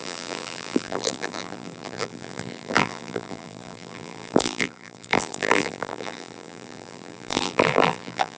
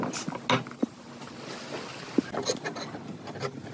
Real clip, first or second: second